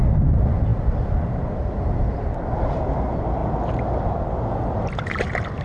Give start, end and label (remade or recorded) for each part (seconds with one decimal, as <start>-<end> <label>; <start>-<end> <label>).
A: 0.0-5.6 recorded